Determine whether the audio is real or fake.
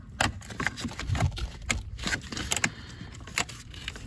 real